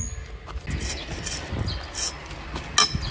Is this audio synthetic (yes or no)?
no